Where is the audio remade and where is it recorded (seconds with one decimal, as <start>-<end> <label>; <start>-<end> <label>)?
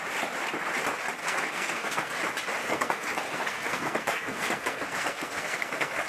0.0-1.2 recorded; 1.2-2.2 remade; 2.2-2.6 recorded; 2.6-6.1 remade